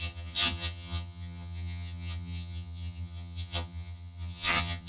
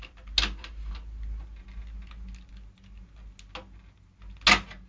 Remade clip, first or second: first